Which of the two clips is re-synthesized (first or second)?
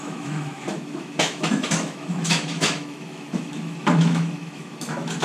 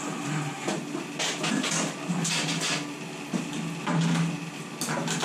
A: first